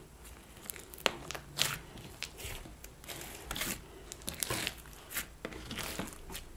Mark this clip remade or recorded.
recorded